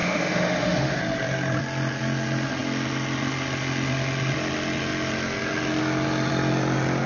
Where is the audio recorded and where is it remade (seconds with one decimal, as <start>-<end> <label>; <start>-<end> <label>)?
0.0-1.0 remade; 1.0-7.1 recorded